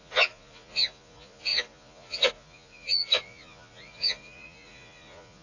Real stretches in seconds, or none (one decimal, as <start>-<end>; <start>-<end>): none